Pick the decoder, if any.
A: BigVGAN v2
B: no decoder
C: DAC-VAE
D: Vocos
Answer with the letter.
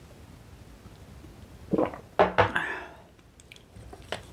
B